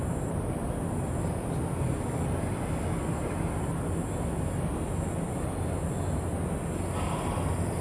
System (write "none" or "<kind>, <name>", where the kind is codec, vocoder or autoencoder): none